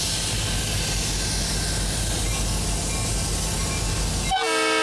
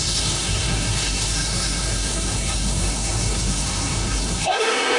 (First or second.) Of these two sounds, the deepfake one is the second